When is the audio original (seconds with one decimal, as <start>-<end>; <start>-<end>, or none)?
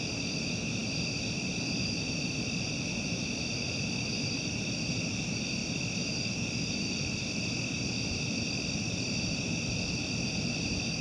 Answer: 5.6-6.5